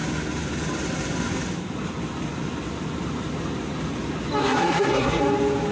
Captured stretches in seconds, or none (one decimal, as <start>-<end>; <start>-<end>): 0.0-4.4; 5.2-5.7